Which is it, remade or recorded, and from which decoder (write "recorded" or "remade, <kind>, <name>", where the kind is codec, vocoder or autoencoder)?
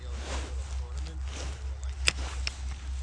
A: recorded